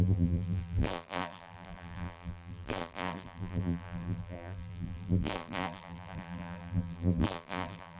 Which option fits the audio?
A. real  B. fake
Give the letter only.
B